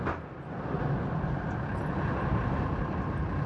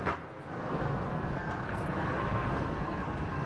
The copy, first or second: second